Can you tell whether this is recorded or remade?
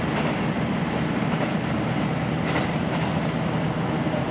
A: recorded